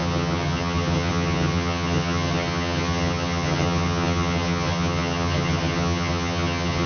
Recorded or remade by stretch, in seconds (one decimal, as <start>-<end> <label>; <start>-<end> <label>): 0.0-6.9 remade